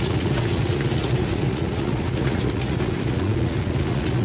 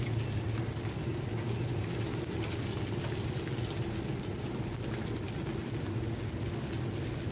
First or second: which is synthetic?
first